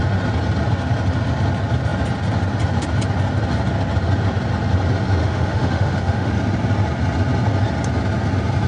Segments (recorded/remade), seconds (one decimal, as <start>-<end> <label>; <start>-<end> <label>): 0.0-5.2 recorded; 5.2-6.3 remade; 6.3-8.7 recorded